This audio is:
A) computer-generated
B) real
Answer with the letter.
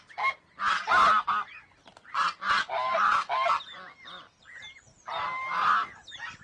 B